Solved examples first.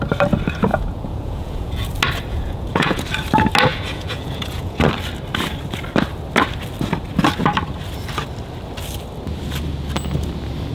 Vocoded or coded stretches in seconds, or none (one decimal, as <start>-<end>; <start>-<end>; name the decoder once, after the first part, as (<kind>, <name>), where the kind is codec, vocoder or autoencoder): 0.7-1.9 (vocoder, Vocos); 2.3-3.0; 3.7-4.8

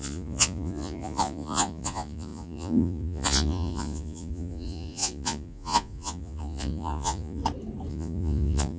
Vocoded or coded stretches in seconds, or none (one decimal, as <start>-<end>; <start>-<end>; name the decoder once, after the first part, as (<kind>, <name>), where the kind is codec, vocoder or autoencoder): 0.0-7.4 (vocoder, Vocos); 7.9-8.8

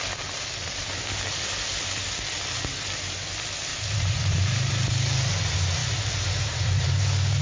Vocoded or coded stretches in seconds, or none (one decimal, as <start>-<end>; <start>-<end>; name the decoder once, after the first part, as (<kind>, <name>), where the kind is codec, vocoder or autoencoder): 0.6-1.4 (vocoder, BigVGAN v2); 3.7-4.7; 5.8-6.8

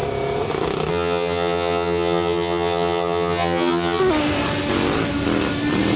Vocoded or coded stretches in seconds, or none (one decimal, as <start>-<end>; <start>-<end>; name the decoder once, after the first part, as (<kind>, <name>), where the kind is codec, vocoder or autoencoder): 0.9-4.0 (vocoder, HiFi-GAN)

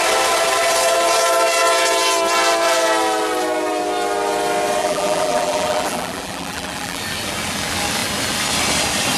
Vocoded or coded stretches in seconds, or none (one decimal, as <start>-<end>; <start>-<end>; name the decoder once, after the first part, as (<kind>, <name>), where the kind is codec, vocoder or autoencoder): 4.8-7.0 (vocoder, BigVGAN v2)

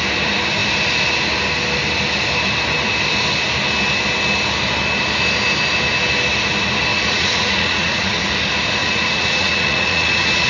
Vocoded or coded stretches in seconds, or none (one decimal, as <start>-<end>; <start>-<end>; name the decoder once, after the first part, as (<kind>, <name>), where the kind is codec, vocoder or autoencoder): 6.9-8.2 (vocoder, Vocos); 8.8-10.5

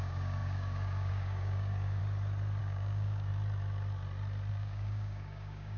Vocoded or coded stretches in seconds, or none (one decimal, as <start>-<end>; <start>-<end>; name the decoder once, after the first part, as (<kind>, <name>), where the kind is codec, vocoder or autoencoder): 0.0-2.0 (codec, DAC); 2.6-3.3; 4.5-5.8

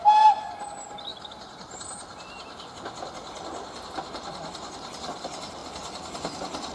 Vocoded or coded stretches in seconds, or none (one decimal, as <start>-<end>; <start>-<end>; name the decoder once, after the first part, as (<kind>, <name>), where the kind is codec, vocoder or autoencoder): none